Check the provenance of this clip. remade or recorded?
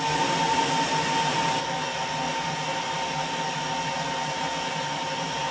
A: recorded